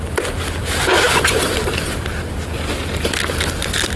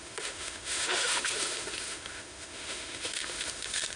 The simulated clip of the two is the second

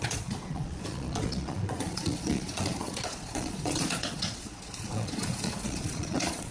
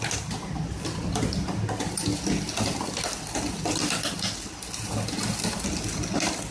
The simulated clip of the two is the first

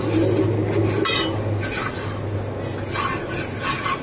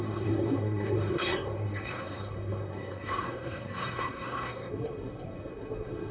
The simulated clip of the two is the second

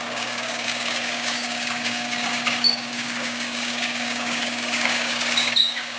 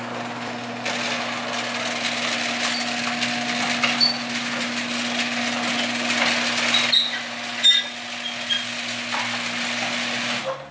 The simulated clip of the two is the first